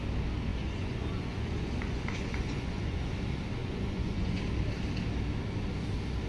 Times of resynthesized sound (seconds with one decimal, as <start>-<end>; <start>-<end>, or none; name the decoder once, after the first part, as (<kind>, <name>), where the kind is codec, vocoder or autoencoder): 0.5-3.1 (vocoder, Vocos); 3.6-4.4